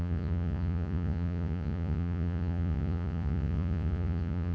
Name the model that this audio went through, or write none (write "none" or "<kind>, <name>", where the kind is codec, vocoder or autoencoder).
vocoder, Vocos